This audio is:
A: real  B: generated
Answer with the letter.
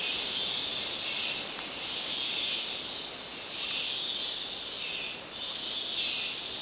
A